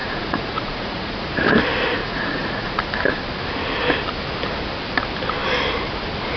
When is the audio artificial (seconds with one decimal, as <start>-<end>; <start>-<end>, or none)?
0.0-1.3; 2.0-2.8